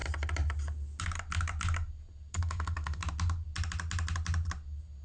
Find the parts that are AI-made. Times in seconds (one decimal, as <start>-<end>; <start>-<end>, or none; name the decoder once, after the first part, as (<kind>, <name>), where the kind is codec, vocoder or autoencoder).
2.3-3.0 (codec, SNAC)